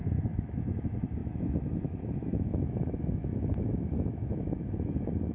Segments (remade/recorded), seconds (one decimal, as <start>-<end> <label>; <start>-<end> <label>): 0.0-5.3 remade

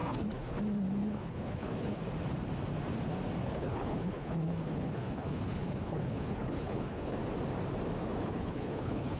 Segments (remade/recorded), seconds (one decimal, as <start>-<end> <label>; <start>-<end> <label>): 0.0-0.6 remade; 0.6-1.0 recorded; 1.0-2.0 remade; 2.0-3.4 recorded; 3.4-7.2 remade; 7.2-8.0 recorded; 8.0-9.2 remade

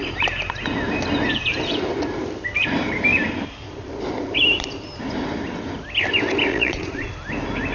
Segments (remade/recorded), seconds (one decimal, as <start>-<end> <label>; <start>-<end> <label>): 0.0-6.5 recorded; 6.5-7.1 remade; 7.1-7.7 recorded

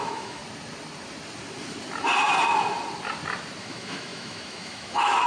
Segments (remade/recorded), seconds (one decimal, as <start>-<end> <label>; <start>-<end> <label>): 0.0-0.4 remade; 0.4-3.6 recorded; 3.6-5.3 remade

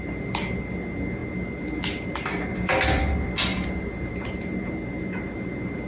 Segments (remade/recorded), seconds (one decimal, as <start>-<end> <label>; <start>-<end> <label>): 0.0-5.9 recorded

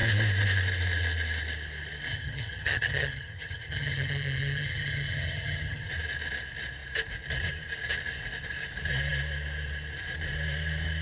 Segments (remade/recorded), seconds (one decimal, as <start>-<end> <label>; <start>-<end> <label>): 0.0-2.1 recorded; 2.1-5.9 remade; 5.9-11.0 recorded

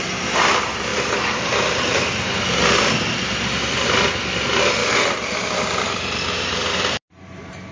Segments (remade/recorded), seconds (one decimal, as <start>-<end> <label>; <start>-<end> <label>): 0.0-7.7 recorded

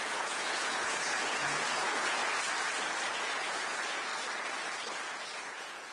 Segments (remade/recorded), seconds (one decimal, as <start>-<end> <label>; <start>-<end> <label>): 0.0-2.2 remade; 2.2-3.2 recorded; 3.2-4.1 remade; 4.1-5.1 recorded; 5.1-5.9 remade